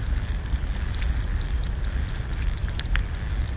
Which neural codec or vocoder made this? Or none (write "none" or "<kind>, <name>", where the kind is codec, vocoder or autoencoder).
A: none